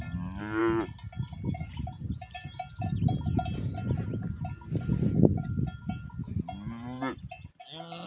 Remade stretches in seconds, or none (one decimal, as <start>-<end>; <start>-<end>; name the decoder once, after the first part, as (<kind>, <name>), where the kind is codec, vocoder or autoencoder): none